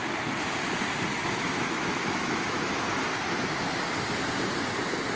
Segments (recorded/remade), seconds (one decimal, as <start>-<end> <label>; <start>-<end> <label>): 0.0-1.1 recorded; 1.1-2.7 remade; 2.7-5.2 recorded